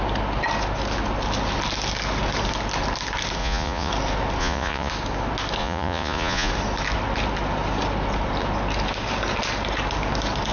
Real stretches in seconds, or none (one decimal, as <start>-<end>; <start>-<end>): 0.0-3.4; 3.9-4.4; 4.9-5.6; 6.5-10.5